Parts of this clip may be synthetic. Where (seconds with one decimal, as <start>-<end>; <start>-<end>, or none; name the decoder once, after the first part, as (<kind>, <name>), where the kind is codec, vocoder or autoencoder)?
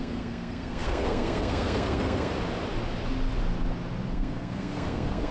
0.0-2.3 (codec, SNAC); 4.1-5.3